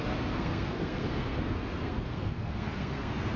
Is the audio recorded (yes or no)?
no